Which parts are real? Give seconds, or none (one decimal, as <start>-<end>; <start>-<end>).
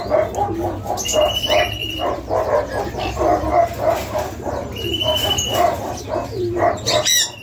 0.0-1.8; 6.0-7.4